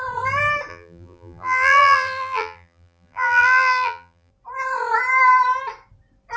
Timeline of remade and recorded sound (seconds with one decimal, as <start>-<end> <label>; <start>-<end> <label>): 0.0-0.7 recorded; 0.7-4.3 remade; 4.3-6.4 recorded